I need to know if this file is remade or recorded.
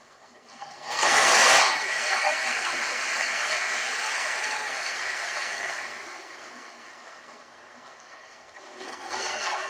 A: remade